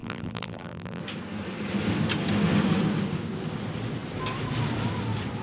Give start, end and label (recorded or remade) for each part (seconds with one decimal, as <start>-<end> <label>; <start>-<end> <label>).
0.0-1.0 remade; 1.0-5.4 recorded